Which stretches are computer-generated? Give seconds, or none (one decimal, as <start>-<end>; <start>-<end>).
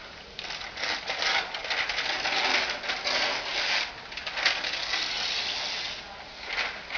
none